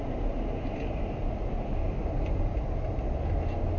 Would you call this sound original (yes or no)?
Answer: yes